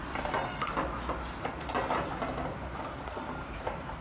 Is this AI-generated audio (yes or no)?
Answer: no